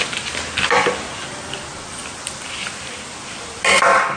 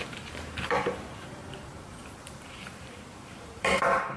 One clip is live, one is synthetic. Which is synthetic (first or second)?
second